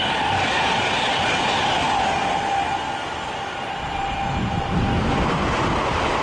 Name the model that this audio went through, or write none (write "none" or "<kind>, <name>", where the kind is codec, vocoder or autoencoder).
none